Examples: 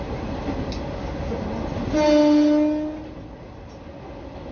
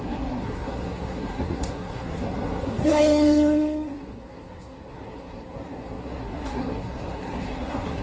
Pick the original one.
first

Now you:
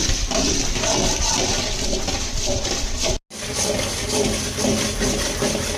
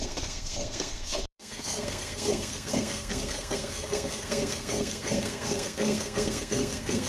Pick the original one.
first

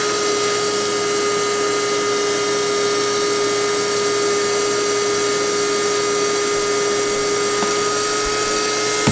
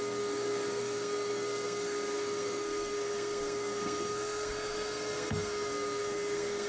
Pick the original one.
first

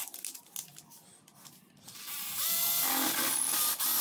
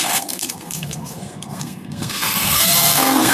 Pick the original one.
first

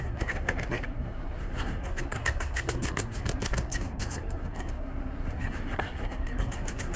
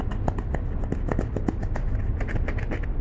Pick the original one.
second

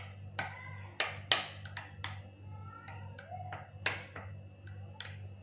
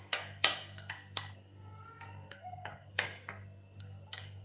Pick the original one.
first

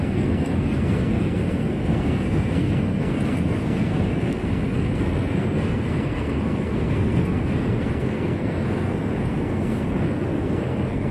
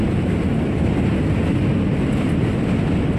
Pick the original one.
second